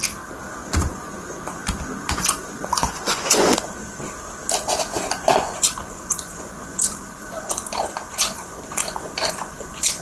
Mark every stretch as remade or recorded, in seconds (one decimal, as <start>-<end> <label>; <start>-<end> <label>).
0.0-0.6 recorded; 0.6-4.0 remade; 4.0-4.9 recorded; 4.9-10.0 remade